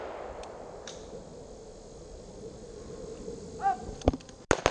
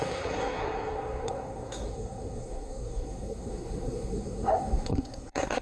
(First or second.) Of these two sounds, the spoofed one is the second